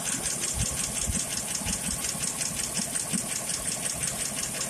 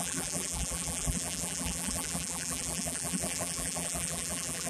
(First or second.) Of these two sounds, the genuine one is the first